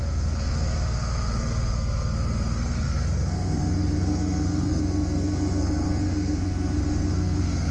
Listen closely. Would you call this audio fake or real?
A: fake